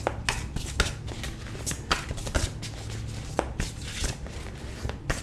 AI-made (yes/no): no